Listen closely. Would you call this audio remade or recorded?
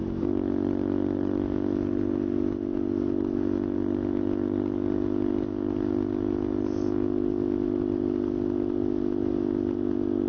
recorded